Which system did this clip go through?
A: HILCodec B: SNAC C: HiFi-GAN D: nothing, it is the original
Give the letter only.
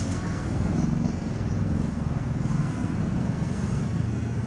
B